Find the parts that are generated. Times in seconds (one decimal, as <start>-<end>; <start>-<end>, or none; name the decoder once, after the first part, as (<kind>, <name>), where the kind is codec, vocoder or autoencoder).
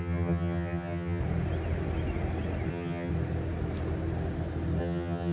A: 0.0-1.2 (vocoder, HiFi-GAN); 2.7-3.1; 4.8-5.3